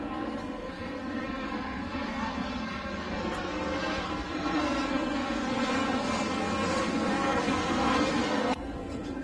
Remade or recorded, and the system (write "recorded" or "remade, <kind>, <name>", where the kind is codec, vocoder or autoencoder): remade, codec, SNAC